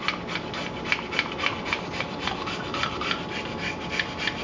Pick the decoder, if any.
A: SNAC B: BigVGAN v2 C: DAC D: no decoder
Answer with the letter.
D